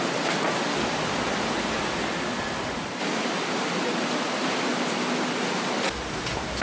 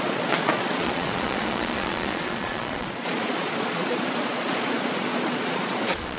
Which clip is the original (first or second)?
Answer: first